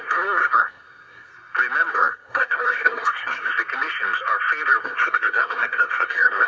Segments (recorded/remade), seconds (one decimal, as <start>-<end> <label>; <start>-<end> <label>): 0.0-1.3 remade; 1.3-1.9 recorded; 1.9-3.5 remade; 3.5-4.8 recorded; 4.8-6.5 remade

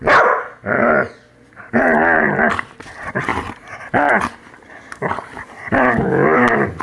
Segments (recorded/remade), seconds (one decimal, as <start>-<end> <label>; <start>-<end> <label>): 0.0-6.8 recorded